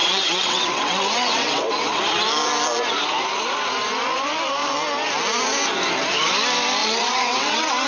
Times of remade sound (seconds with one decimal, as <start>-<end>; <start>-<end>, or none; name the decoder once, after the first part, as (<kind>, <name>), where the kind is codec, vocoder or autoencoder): 0.0-2.0 (vocoder, WaveNeXt); 6.8-7.9